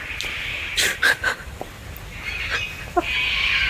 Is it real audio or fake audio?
real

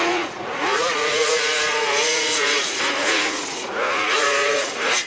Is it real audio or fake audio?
fake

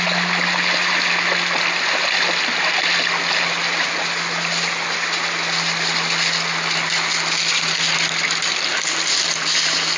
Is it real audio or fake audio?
real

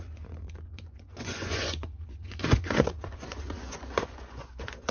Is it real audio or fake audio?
fake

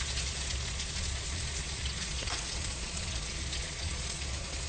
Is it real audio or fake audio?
fake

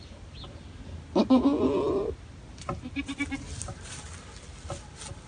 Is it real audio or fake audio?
real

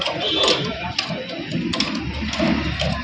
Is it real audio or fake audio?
real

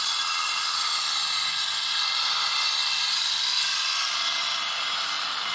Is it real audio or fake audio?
real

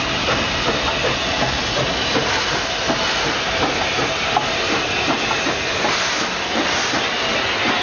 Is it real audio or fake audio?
real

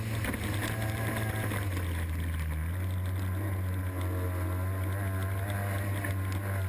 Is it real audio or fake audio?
real